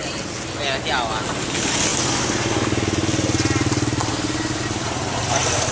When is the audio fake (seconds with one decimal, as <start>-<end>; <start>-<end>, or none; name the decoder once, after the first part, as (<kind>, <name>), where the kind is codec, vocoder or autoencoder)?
none